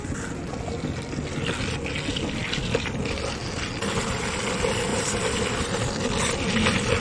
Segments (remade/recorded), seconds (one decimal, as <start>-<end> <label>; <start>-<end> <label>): 0.0-2.4 recorded; 2.4-3.0 remade; 3.0-4.9 recorded; 4.9-5.6 remade; 5.6-7.0 recorded